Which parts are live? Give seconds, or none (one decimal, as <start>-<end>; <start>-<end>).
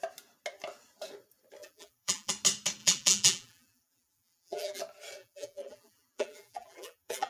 0.0-1.6; 2.3-2.8; 4.8-5.2